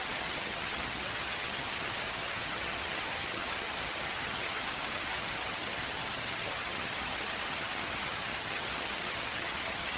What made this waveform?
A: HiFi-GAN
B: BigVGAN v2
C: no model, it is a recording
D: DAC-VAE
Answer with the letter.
A